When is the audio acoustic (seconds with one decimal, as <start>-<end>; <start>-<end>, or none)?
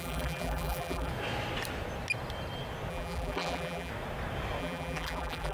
1.1-2.9; 3.9-4.6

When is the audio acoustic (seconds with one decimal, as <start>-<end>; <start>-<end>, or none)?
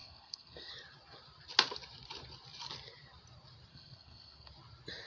0.7-3.7; 4.5-5.1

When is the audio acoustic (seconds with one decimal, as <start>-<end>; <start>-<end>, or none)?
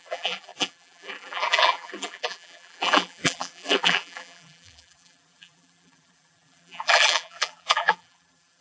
none